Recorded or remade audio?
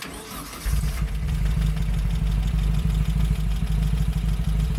recorded